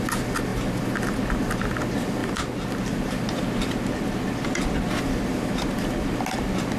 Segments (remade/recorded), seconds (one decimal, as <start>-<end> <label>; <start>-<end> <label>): 0.0-6.8 recorded